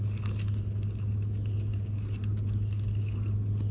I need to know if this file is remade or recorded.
recorded